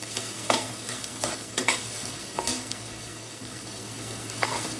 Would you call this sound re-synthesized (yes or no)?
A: yes